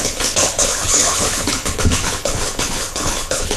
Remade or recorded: remade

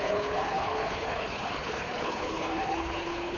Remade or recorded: remade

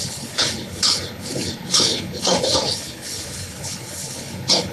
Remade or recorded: remade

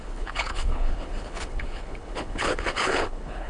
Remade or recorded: remade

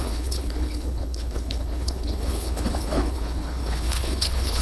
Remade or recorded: remade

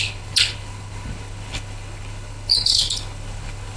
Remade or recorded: remade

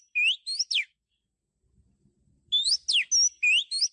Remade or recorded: recorded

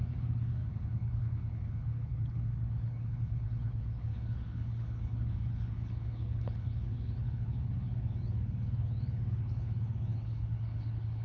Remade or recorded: remade